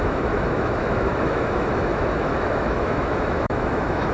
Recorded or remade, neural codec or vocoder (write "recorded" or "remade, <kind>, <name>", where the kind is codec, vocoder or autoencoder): remade, autoencoder, DAC-VAE